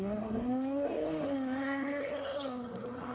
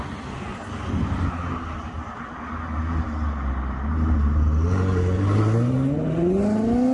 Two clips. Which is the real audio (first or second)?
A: second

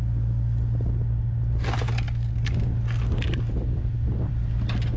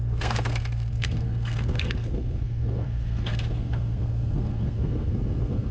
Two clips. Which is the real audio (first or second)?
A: first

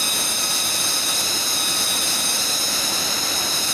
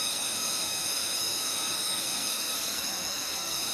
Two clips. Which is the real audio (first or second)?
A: first